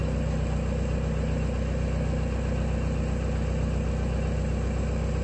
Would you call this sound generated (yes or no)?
no